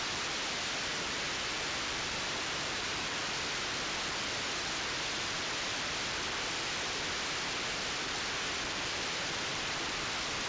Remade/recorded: recorded